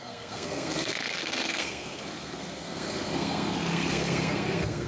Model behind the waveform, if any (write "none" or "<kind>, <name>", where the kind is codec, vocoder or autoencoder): codec, SNAC